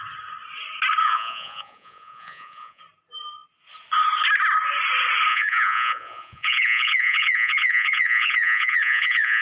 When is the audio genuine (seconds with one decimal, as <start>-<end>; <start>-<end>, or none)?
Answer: 0.0-1.0; 2.8-5.3